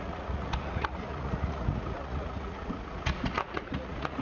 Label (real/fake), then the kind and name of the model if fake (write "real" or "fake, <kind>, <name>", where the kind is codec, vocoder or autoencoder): fake, vocoder, Vocos